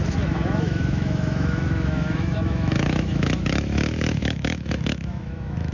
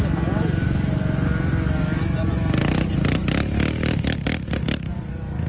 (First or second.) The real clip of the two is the second